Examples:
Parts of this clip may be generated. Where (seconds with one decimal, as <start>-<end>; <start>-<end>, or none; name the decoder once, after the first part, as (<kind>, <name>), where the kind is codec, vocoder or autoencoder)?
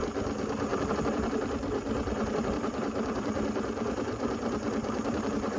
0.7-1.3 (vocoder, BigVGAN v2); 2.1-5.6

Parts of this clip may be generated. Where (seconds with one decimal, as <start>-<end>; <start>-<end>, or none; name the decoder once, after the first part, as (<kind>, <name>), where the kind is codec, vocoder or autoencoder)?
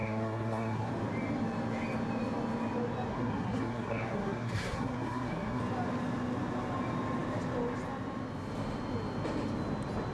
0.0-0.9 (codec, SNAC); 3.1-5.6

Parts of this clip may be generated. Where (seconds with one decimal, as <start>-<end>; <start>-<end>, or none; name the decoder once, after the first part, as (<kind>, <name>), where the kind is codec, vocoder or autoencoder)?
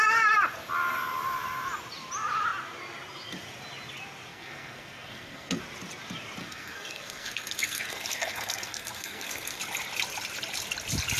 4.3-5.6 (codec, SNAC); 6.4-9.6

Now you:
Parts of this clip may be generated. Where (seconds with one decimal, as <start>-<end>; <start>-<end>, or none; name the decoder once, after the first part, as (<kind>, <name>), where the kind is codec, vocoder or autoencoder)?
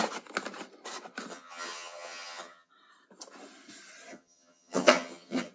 1.3-2.7 (vocoder, HiFi-GAN); 4.1-5.5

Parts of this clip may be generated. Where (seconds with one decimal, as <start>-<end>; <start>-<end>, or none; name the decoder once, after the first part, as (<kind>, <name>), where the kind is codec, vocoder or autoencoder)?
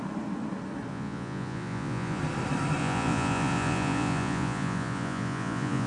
0.9-2.2 (vocoder, Vocos); 2.8-5.9